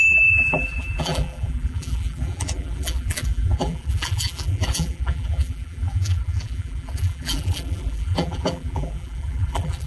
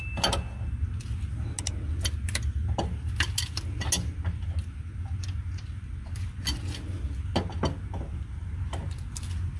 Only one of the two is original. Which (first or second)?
second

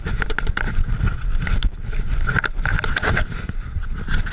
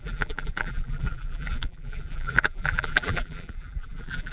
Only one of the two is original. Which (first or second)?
first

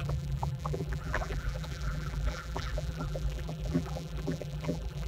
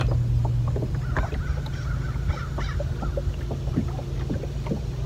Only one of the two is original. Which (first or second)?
second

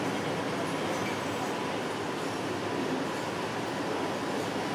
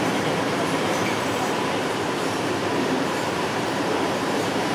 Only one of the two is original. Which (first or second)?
first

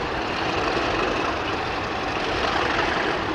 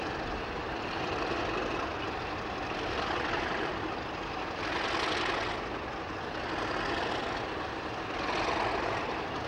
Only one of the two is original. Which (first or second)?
second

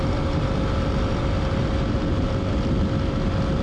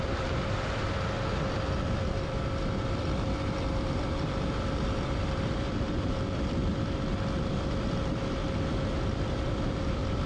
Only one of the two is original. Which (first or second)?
first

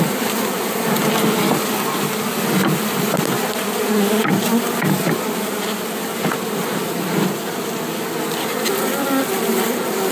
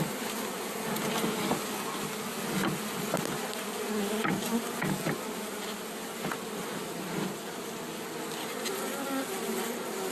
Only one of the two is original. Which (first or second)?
second